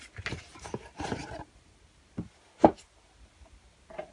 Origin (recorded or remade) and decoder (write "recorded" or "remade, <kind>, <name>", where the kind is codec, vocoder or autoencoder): recorded